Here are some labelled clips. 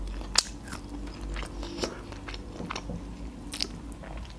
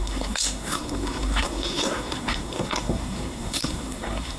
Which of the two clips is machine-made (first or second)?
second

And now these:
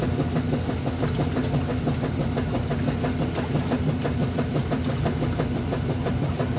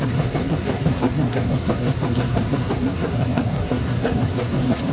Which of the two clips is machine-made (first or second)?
second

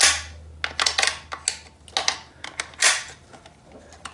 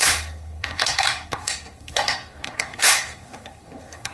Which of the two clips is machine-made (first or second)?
second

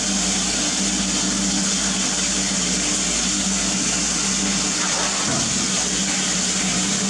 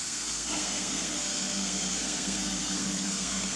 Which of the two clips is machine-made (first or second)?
second